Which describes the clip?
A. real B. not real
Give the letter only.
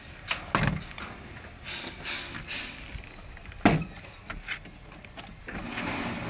A